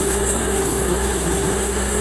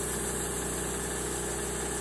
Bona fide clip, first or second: second